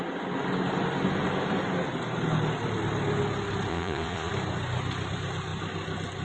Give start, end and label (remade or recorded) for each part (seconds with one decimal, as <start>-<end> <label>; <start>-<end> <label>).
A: 0.0-3.7 recorded; 3.7-4.3 remade; 4.3-6.2 recorded